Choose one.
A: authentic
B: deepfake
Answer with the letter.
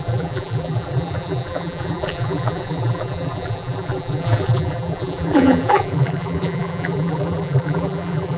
B